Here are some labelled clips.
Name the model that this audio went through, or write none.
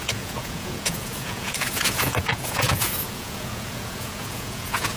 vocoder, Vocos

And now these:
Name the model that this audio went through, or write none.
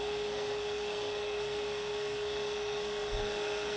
codec, SNAC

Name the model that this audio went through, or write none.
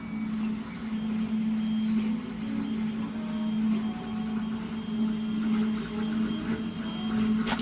none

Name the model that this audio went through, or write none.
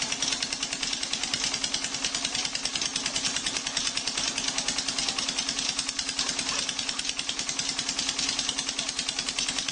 none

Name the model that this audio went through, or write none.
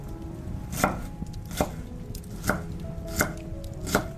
none